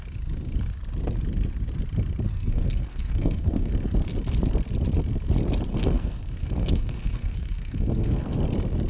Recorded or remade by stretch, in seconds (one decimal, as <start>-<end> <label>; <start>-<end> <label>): 0.0-2.3 recorded; 2.3-3.7 remade; 3.7-5.7 recorded; 5.7-8.4 remade; 8.4-8.9 recorded